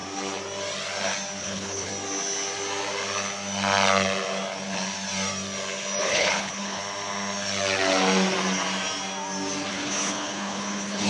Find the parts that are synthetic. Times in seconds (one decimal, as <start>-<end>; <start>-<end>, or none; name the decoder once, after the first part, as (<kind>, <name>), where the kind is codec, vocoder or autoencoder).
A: 1.4-1.9 (codec, HILCodec); 6.0-6.8; 9.7-11.1